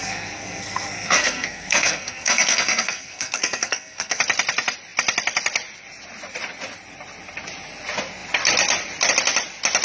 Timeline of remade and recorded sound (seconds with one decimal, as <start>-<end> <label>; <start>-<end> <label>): 0.0-4.2 remade; 4.2-9.8 recorded